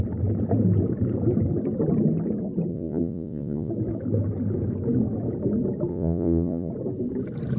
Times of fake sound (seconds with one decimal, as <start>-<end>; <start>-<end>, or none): 2.7-3.7; 5.9-6.7